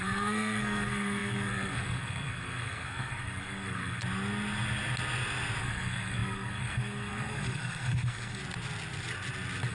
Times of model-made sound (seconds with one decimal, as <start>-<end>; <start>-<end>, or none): 0.0-4.0; 5.6-8.4